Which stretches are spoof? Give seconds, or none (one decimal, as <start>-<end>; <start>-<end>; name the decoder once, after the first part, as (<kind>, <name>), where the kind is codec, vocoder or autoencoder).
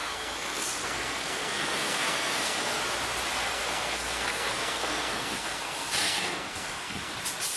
0.0-2.8 (codec, SNAC); 3.4-7.1